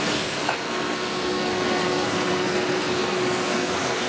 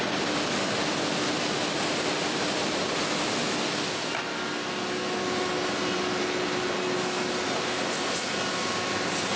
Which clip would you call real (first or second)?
second